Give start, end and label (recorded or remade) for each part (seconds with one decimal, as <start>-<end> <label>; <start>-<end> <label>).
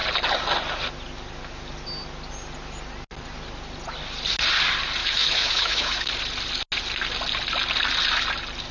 0.0-5.0 recorded; 5.0-6.1 remade; 6.1-8.7 recorded